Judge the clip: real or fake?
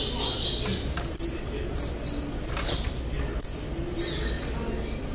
real